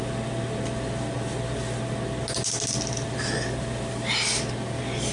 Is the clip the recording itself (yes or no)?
yes